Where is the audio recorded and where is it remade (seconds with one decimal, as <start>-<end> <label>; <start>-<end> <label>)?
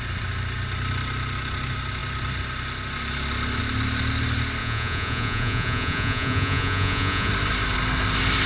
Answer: 0.0-4.6 recorded; 4.6-7.3 remade; 7.3-8.5 recorded